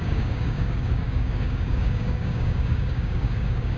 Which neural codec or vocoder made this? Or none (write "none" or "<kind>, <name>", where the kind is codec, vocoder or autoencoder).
codec, DAC